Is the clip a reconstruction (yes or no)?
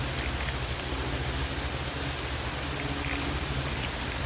no